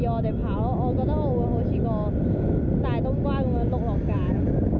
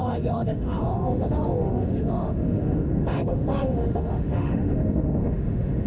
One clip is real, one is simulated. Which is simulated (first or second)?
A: second